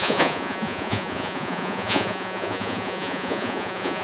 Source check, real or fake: fake